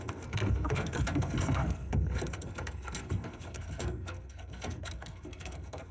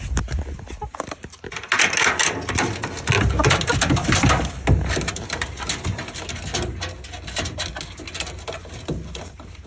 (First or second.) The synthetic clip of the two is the first